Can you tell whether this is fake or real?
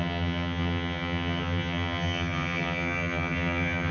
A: fake